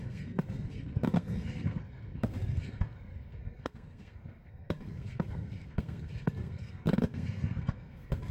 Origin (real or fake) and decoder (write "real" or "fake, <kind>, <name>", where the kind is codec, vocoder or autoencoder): fake, codec, SNAC